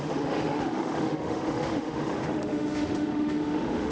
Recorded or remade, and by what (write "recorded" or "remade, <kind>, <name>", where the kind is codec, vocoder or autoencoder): remade, autoencoder, DAC-VAE